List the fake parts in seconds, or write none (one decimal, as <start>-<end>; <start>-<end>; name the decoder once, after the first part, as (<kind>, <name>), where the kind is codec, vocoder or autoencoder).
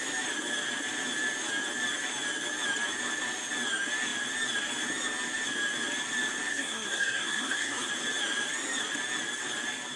6.5-7.9 (codec, SNAC)